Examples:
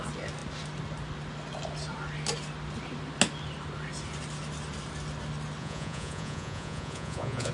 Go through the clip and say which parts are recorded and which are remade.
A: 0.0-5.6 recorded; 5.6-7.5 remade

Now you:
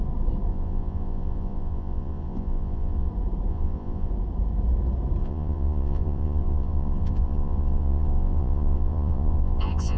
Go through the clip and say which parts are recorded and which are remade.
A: 0.0-0.5 recorded; 0.5-3.1 remade; 3.1-3.5 recorded; 3.5-4.1 remade; 4.1-5.2 recorded; 5.2-10.0 remade

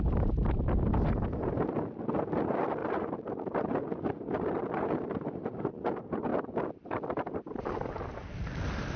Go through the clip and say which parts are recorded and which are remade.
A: 0.0-9.0 recorded

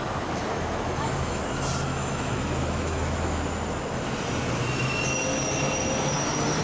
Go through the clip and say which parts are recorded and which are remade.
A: 0.0-0.5 recorded; 0.5-1.4 remade; 1.4-1.9 recorded; 1.9-3.4 remade; 3.4-6.6 recorded

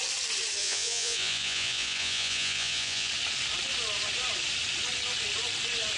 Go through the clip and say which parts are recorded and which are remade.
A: 0.0-0.6 recorded; 0.6-3.1 remade; 3.1-6.0 recorded

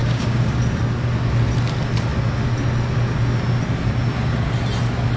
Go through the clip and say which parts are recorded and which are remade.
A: 0.0-0.6 remade; 0.6-5.2 recorded